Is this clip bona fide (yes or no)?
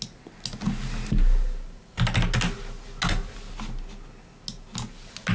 yes